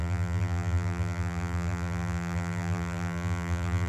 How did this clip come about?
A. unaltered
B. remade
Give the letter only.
B